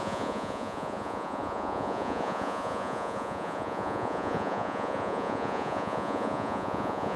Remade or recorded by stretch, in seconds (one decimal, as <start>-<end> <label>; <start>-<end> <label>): 0.0-7.2 remade